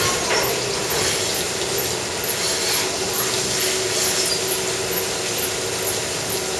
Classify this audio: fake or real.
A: real